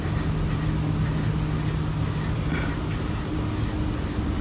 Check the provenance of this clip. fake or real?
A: real